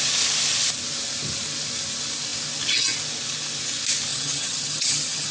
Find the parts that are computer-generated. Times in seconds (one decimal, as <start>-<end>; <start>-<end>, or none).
4.1-5.3